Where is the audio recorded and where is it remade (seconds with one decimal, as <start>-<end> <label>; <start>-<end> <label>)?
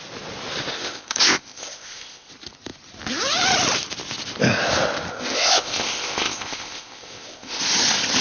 0.0-0.7 recorded; 0.7-2.3 remade; 2.3-5.1 recorded; 5.1-7.6 remade; 7.6-8.2 recorded